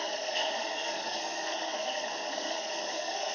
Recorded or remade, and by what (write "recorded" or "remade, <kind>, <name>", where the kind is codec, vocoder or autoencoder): remade, codec, SNAC